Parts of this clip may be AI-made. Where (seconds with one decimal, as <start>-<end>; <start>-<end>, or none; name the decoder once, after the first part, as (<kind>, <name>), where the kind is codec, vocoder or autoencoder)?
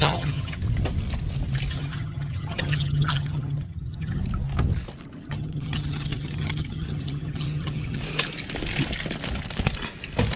0.0-0.6 (vocoder, HiFi-GAN); 1.7-4.2; 5.3-8.0